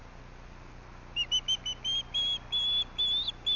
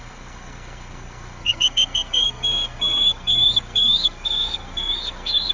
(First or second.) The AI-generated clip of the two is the second